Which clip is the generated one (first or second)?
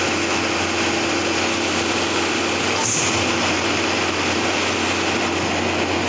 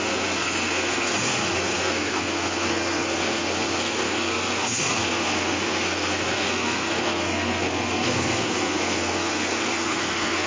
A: second